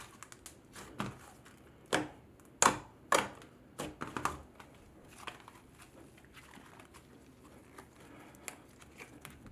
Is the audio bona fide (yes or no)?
yes